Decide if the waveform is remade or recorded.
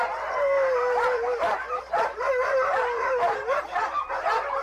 remade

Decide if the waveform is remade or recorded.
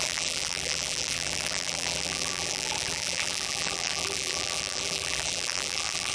remade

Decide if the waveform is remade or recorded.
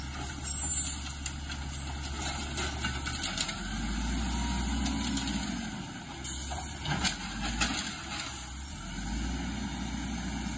recorded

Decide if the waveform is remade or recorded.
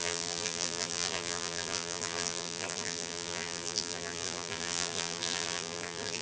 remade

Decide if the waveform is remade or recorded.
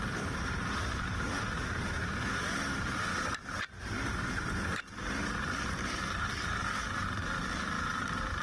remade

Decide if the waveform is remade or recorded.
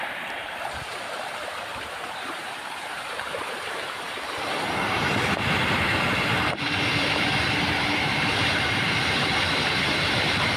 remade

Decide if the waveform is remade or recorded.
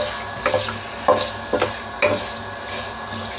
recorded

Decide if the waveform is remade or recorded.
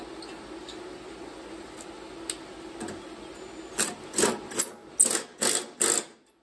recorded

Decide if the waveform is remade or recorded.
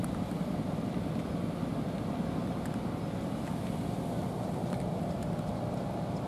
recorded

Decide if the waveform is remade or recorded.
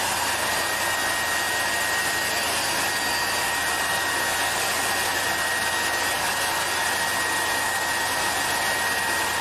recorded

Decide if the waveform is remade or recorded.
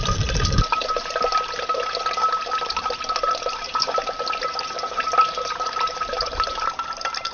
remade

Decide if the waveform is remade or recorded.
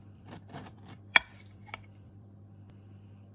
remade